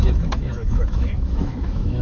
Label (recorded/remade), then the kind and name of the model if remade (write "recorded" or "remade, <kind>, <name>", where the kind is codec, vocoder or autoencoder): remade, autoencoder, DAC-VAE